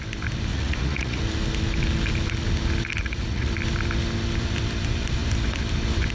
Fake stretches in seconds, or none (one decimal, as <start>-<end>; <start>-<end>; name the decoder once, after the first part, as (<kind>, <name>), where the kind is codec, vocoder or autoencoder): 0.5-1.2 (vocoder, Vocos); 3.0-3.5